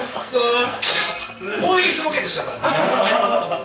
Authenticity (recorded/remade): remade